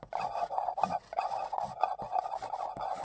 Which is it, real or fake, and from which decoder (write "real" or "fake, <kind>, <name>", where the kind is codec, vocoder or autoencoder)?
real